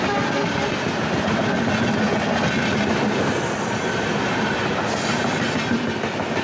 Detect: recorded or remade recorded